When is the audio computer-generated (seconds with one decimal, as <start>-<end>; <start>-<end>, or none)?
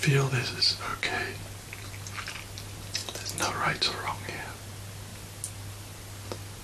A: none